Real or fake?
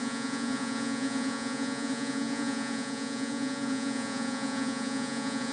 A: fake